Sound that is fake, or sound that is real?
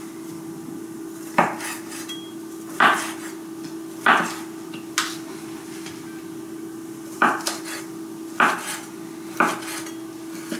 real